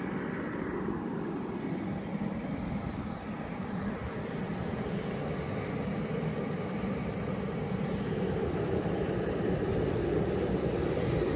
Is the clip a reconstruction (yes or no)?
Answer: no